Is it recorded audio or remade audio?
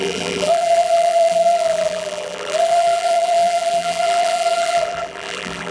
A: remade